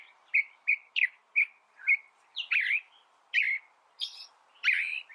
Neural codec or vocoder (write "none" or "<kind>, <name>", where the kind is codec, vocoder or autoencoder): vocoder, BigVGAN v2